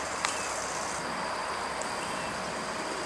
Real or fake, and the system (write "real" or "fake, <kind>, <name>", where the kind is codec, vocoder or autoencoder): real